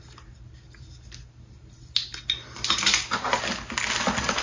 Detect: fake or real real